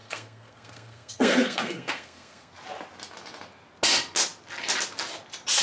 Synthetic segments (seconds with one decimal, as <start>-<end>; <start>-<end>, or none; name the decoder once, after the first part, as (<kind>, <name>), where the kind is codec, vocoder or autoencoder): 0.0-2.5 (codec, SNAC)